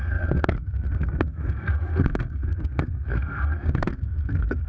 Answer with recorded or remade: remade